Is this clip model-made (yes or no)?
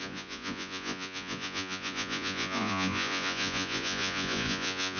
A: yes